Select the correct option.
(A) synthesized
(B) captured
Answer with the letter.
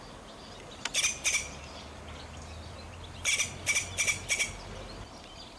B